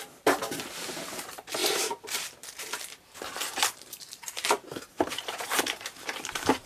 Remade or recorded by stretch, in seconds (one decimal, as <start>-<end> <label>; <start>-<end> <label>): 0.0-6.7 remade